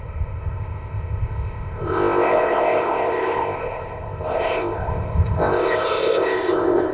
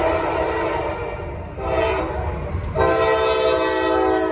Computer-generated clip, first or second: first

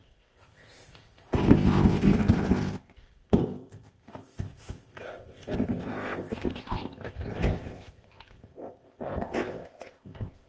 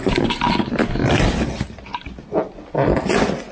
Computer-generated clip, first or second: first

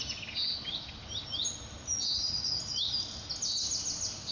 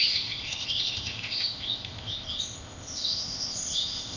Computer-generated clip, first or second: second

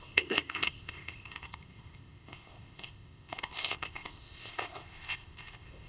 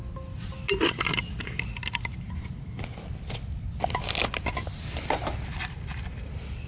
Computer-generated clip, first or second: first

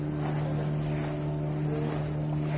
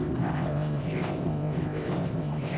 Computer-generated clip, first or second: second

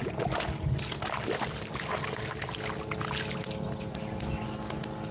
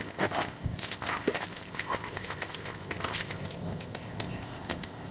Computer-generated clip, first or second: second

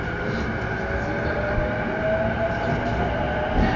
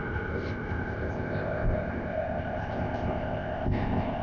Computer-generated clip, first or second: second